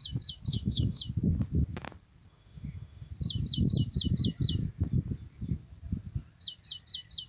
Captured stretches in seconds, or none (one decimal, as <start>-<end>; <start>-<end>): 0.0-0.5; 1.0-2.3; 3.1-7.3